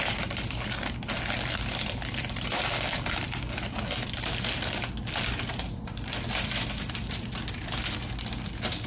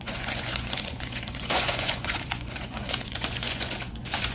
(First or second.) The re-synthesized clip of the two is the second